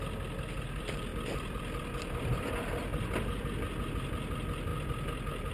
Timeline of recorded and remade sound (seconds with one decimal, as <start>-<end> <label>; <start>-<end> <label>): 0.0-5.5 recorded